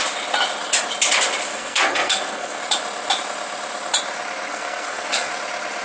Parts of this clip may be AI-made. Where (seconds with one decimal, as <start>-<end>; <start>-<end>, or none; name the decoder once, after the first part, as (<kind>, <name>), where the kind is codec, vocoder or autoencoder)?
1.5-2.6 (codec, SNAC); 4.5-5.3